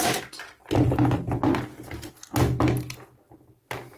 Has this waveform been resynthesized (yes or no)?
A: no